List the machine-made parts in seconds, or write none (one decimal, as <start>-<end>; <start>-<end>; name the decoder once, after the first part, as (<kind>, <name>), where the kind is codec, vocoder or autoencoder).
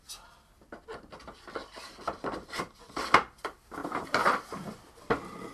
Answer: 1.6-2.5 (vocoder, BigVGAN v2); 3.8-5.0